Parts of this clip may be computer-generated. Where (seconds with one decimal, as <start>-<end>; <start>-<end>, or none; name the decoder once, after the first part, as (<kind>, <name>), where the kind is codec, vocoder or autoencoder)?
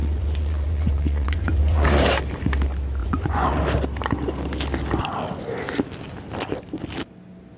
0.0-2.0 (vocoder, Vocos); 3.0-3.6